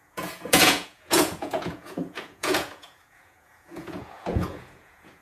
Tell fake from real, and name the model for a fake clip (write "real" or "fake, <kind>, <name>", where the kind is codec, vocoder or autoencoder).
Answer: fake, vocoder, Vocos